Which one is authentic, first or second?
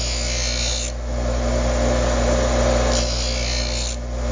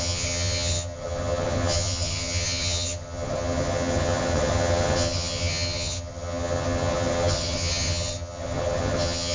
first